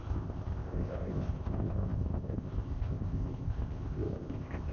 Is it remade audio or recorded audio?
remade